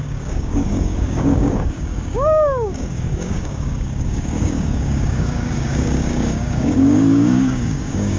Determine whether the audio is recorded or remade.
remade